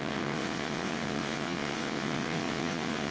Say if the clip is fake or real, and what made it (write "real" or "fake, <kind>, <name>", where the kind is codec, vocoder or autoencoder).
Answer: fake, vocoder, WaveNeXt